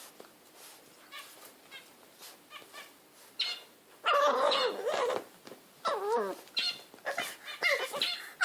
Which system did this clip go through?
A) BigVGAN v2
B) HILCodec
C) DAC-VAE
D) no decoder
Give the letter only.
D